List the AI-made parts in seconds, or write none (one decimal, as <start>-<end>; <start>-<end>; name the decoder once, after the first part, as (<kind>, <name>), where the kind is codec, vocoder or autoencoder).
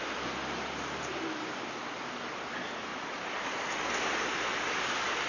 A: none